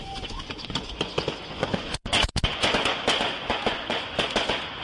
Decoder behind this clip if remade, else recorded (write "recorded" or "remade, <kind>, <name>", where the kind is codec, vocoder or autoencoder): remade, vocoder, Vocos